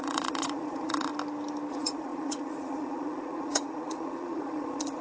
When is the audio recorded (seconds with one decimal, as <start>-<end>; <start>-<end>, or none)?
1.1-1.7

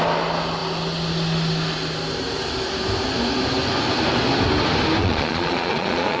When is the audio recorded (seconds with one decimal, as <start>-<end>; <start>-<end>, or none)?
0.0-5.0